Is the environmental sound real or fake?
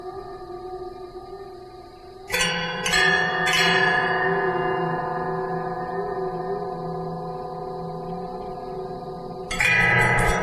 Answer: real